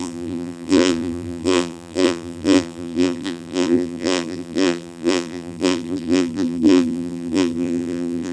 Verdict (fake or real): fake